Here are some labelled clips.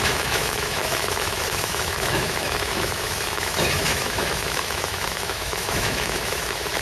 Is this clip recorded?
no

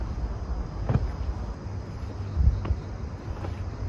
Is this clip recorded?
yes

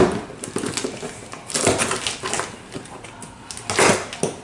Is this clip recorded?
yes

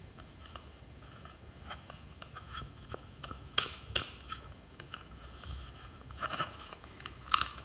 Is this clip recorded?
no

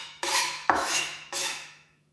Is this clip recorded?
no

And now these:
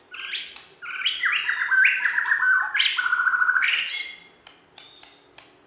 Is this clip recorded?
yes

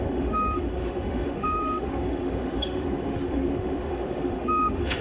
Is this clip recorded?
no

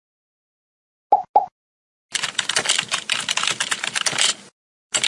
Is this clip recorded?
yes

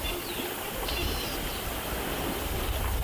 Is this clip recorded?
yes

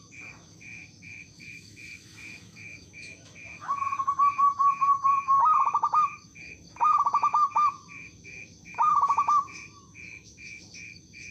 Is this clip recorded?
no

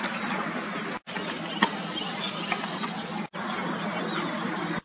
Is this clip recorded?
yes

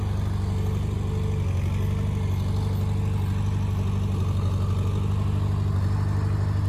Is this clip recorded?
yes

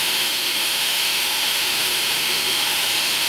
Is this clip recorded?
no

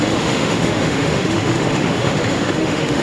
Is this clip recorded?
no